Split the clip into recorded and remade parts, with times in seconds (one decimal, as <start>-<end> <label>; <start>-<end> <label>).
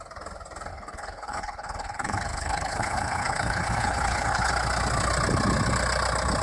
0.0-0.7 recorded; 0.7-4.5 remade; 4.5-6.4 recorded